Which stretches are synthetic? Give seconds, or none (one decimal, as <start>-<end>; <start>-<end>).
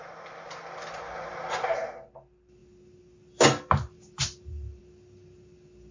none